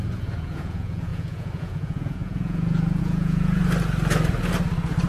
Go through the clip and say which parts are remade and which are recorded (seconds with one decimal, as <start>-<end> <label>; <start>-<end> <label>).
0.0-3.6 remade; 3.6-5.1 recorded